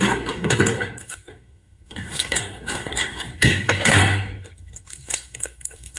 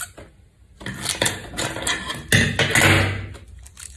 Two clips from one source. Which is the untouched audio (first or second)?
second